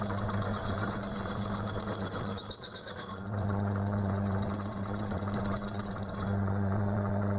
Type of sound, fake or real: fake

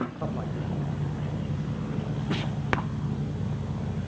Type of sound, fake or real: real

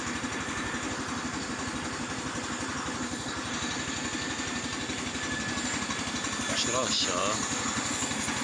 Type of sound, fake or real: real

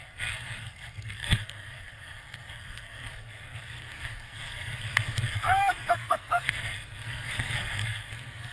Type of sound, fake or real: fake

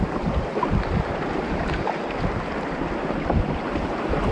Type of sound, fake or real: real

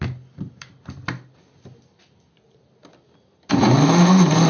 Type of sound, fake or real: real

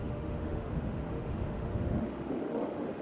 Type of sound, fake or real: fake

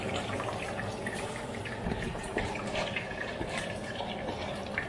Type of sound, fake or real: fake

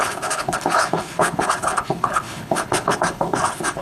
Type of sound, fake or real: fake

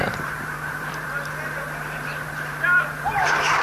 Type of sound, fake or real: fake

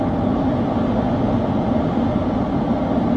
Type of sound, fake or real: real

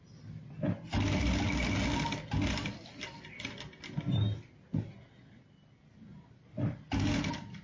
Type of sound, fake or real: real